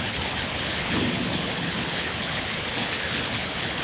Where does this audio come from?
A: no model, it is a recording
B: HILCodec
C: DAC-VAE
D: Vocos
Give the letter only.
B